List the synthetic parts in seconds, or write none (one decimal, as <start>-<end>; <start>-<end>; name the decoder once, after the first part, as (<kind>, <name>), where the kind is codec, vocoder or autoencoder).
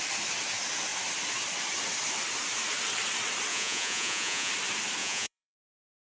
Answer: 3.5-4.5 (vocoder, Vocos); 5.0-5.6